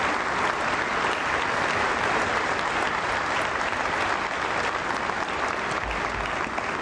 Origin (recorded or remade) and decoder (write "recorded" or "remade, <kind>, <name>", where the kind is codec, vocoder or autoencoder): recorded